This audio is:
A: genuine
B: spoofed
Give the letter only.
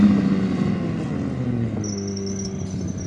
A